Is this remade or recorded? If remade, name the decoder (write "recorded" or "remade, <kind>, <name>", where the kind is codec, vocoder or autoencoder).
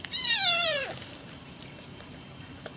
remade, vocoder, BigVGAN v2